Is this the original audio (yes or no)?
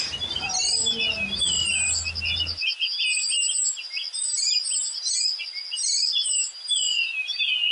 yes